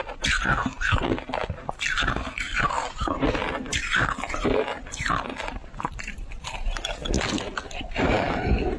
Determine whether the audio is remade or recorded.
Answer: recorded